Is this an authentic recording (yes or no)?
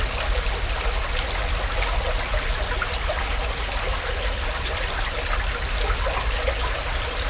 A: yes